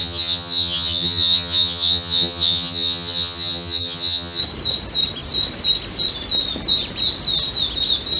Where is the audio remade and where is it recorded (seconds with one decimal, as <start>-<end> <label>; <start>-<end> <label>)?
0.0-4.4 remade; 4.4-8.2 recorded